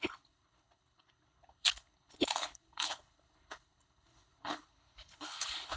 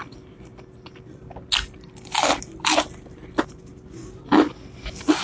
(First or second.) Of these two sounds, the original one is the second